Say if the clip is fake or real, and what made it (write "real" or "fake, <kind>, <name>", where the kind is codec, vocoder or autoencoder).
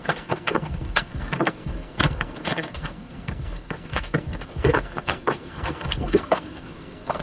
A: fake, codec, SNAC